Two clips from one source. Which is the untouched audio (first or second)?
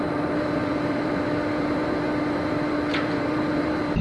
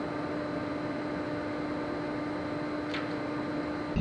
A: second